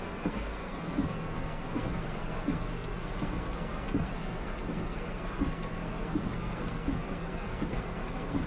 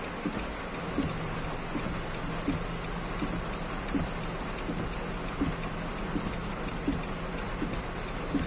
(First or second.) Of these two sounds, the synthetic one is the first